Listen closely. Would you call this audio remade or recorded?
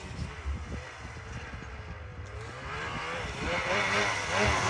remade